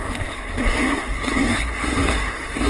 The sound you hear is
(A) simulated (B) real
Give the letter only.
A